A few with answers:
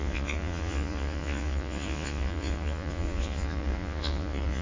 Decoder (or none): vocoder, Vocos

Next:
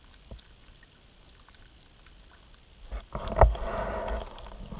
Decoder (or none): none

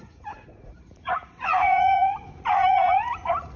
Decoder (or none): vocoder, Vocos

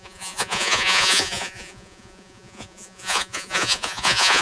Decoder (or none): vocoder, Vocos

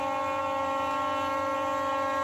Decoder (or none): none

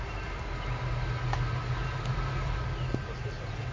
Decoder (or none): none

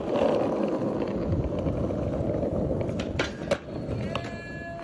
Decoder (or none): none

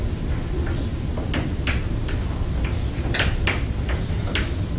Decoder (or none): none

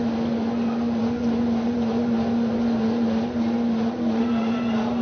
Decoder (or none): none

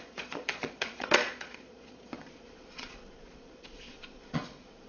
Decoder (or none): vocoder, Vocos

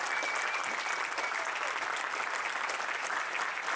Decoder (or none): none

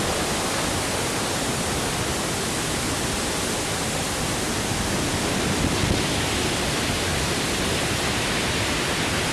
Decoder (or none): none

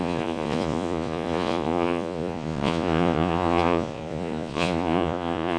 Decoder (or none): vocoder, Vocos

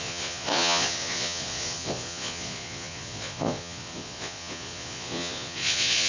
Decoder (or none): vocoder, Vocos